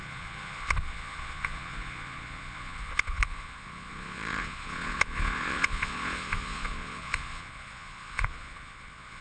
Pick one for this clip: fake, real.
fake